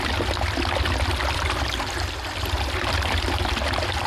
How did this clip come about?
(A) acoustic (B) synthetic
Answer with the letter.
B